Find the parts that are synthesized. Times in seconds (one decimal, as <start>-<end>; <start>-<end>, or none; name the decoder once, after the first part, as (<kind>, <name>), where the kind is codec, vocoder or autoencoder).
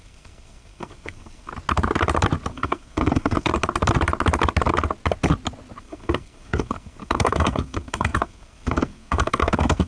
0.0-1.5 (codec, SNAC); 2.5-3.5; 5.8-9.9